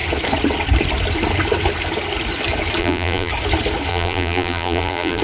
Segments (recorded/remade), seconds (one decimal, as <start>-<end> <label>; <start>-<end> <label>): 0.0-2.8 recorded; 2.8-3.3 remade; 3.3-3.9 recorded; 3.9-5.2 remade